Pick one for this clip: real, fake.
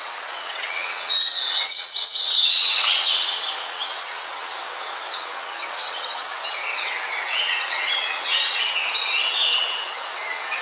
fake